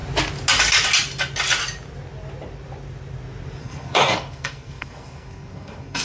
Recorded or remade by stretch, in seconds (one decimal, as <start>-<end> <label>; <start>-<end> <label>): 0.0-3.6 recorded; 3.6-6.0 remade